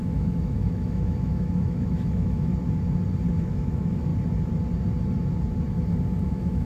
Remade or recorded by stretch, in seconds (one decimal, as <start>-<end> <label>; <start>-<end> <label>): 0.0-2.5 remade; 2.5-3.3 recorded; 3.3-4.1 remade; 4.1-6.3 recorded; 6.3-6.7 remade